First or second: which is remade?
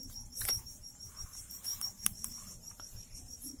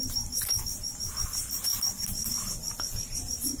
first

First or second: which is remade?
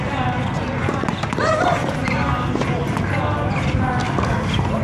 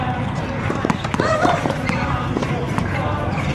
second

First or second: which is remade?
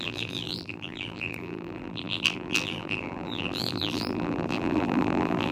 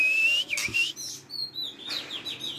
first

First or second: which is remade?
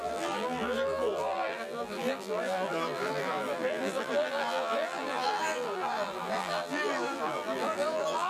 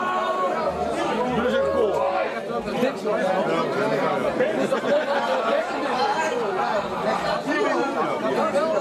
first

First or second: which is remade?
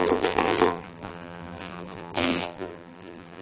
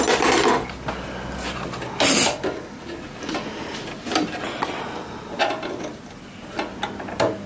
first